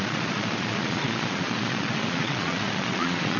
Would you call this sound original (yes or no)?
no